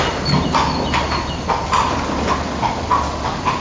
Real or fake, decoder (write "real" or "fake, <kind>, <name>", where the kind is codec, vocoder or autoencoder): real